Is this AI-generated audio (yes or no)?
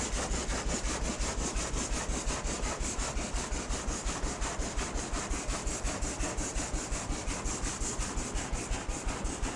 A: no